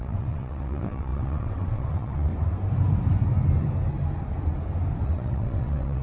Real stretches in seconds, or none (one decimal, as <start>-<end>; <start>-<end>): 2.3-5.0